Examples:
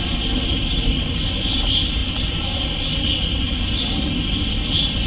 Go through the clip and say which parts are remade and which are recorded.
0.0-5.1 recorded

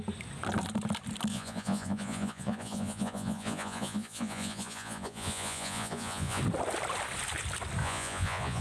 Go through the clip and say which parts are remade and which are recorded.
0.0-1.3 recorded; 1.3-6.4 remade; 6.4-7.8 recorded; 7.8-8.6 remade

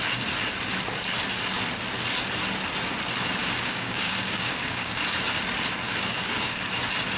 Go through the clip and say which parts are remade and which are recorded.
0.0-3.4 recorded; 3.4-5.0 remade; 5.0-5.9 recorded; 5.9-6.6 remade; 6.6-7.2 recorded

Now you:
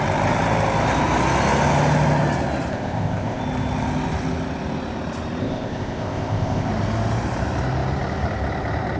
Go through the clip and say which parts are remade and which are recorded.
0.0-2.7 recorded; 2.7-3.4 remade; 3.4-5.4 recorded; 5.4-6.7 remade; 6.7-9.0 recorded